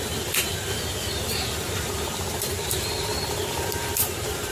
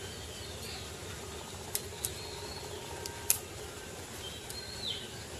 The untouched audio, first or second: second